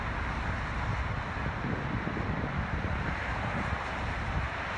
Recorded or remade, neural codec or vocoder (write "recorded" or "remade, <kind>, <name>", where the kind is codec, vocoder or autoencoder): recorded